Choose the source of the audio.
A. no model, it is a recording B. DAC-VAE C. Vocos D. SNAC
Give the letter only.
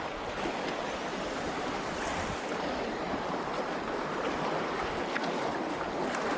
A